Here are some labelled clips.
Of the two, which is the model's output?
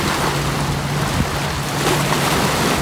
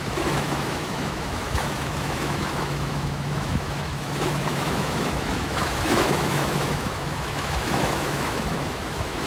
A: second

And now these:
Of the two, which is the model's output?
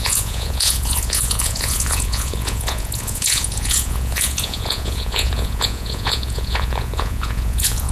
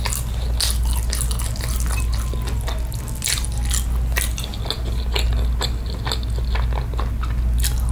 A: first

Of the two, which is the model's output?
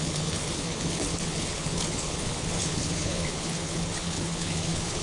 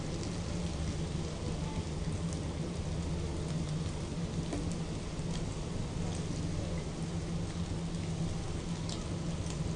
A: first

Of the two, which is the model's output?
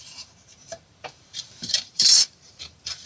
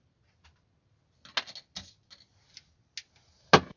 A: first